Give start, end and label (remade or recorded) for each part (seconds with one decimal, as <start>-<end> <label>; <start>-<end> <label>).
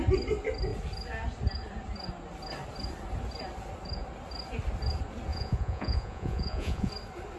0.0-5.3 recorded; 5.3-6.9 remade; 6.9-7.4 recorded